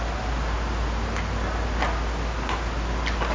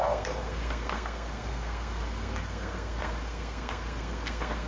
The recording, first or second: first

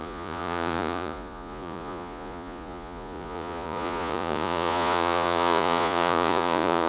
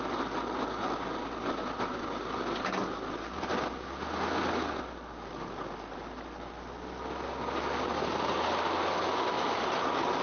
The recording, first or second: second